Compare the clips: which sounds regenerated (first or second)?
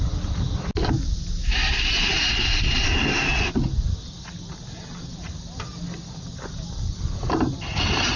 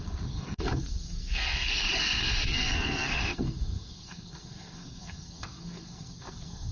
second